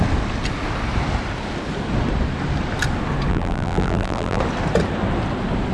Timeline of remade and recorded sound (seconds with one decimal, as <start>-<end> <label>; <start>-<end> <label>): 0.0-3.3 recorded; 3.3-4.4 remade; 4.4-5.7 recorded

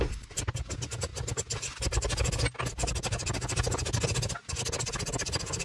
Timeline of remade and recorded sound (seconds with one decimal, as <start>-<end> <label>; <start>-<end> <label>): 0.0-5.6 recorded

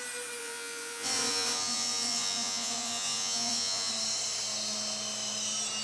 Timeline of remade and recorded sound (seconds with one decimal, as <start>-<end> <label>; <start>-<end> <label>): 0.0-0.4 recorded; 0.4-3.9 remade; 3.9-5.8 recorded

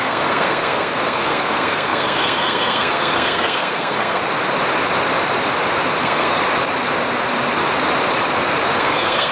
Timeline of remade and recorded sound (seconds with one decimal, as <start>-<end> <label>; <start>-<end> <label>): 0.0-4.2 remade; 4.2-6.0 recorded; 6.0-6.4 remade; 6.4-8.8 recorded; 8.8-9.3 remade

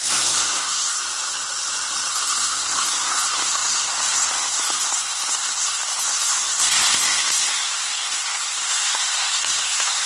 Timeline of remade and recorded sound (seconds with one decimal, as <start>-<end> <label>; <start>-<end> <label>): 0.0-1.0 remade; 1.0-2.1 recorded; 2.1-10.1 remade